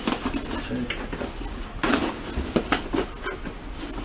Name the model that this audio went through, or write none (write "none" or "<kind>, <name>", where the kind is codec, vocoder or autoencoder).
none